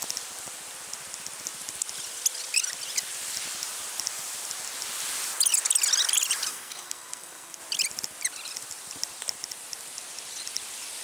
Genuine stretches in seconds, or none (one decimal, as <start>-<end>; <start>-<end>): 0.0-6.5; 7.6-11.0